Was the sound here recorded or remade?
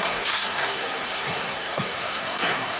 remade